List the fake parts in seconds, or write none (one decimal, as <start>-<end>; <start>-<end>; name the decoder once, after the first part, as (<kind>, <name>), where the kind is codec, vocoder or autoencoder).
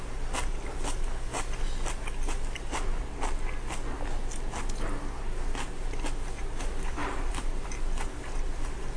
7.0-7.7 (vocoder, BigVGAN v2)